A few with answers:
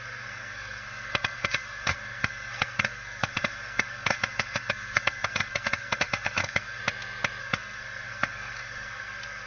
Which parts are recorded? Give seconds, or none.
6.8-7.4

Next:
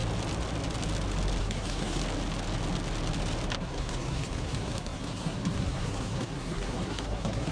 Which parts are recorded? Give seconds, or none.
0.0-1.4; 2.0-3.6

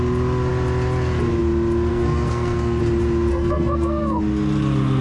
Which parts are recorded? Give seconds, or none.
0.0-1.9; 2.8-3.3; 4.2-5.0

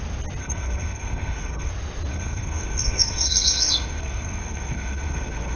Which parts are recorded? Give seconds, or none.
0.0-0.4; 1.7-2.1

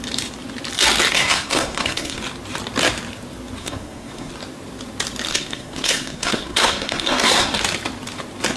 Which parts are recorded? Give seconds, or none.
0.0-1.1; 2.2-3.6; 4.3-5.3; 7.6-8.6

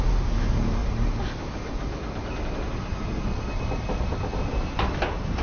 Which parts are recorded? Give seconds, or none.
0.0-5.4